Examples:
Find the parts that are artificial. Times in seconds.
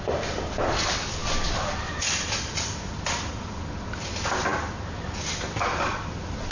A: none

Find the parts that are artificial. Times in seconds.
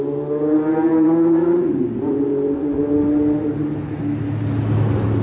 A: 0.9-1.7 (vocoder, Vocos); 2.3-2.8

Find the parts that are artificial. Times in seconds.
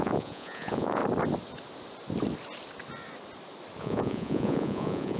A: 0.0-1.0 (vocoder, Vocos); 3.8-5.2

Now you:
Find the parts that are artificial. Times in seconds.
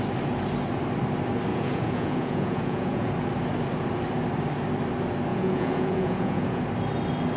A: 1.5-3.1 (vocoder, Vocos); 5.3-6.6